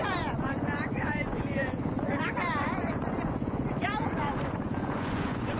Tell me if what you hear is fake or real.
fake